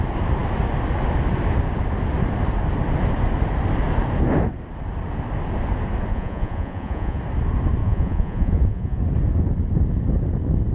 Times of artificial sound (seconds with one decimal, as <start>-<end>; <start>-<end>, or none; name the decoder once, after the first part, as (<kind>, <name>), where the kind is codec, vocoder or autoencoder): 6.1-7.2 (vocoder, Vocos); 7.8-9.0